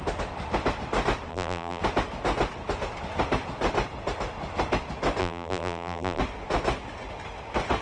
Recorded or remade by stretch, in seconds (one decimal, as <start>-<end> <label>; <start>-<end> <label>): 0.0-1.3 recorded; 1.3-1.8 remade; 1.8-5.2 recorded; 5.2-6.2 remade; 6.2-7.8 recorded